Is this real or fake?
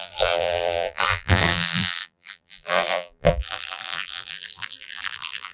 fake